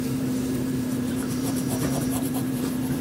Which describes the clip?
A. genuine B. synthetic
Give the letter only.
B